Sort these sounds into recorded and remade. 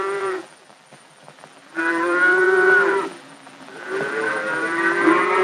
remade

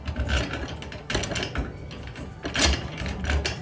recorded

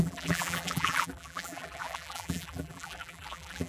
remade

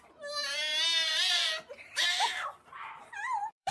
remade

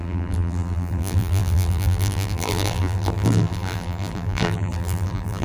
remade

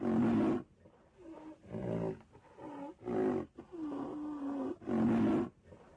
recorded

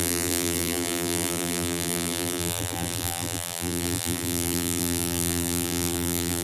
remade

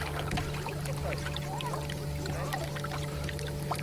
recorded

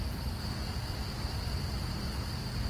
recorded